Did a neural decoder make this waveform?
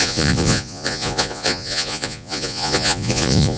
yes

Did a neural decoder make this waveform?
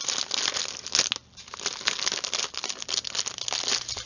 no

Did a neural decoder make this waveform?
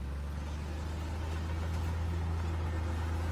no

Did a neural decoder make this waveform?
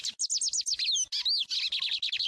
no